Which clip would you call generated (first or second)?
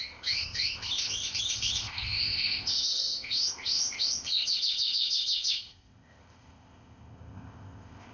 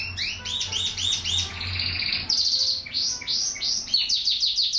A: first